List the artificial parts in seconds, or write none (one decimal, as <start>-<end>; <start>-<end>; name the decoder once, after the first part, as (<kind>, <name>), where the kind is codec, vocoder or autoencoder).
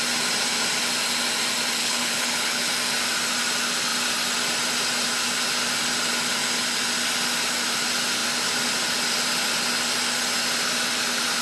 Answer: 1.8-2.7 (codec, HILCodec)